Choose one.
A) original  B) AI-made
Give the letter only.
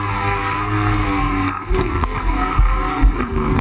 B